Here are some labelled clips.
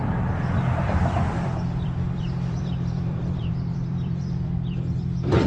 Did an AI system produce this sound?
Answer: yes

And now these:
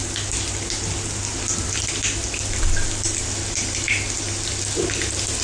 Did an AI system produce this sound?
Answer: no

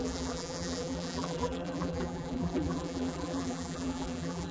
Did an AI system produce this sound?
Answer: yes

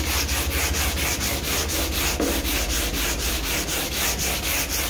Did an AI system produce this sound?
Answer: no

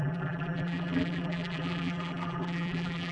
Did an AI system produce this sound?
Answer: yes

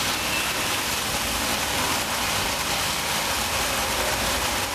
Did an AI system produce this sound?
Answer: no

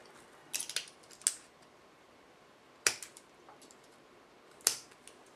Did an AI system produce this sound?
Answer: no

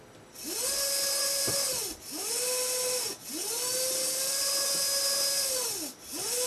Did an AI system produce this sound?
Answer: no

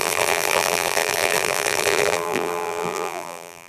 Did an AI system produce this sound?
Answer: yes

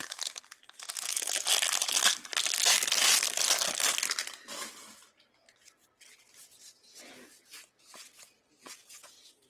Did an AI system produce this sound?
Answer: no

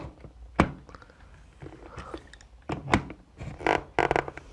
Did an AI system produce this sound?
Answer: no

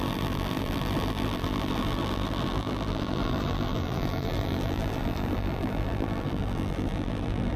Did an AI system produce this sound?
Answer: yes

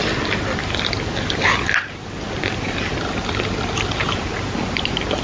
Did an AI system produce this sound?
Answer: no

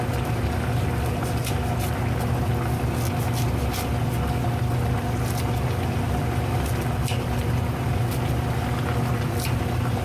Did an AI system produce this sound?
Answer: no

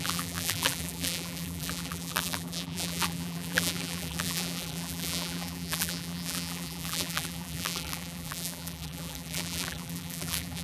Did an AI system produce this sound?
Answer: yes